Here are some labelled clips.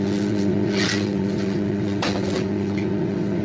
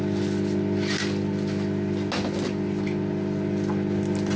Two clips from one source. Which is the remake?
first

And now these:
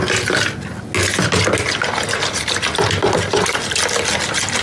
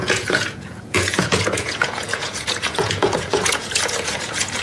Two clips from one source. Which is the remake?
second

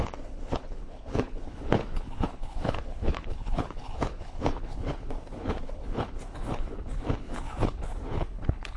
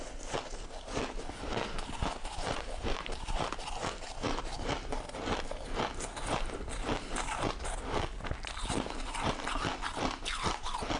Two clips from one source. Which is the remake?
first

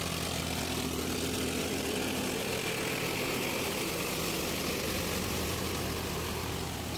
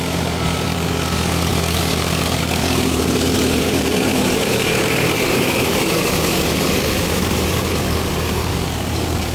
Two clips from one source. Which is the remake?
second